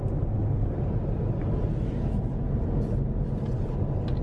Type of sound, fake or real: real